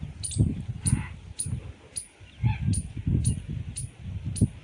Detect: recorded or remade recorded